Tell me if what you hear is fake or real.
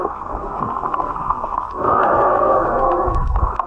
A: fake